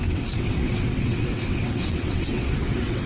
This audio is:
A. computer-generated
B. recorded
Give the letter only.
A